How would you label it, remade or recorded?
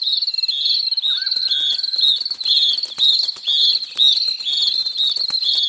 recorded